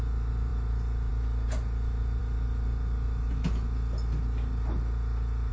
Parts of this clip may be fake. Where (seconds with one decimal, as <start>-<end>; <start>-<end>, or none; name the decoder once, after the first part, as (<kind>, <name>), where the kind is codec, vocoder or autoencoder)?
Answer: none